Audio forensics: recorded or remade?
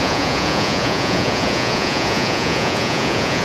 remade